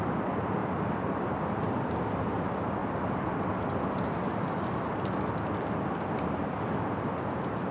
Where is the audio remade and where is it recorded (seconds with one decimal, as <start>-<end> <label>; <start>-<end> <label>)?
0.0-7.7 recorded

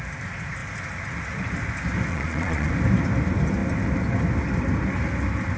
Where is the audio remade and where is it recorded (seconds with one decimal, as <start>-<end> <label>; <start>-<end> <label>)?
0.0-2.1 recorded; 2.1-2.7 remade; 2.7-5.6 recorded

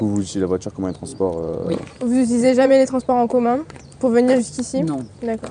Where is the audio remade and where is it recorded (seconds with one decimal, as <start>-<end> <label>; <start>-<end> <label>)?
0.0-1.1 recorded; 1.1-4.4 remade; 4.4-5.5 recorded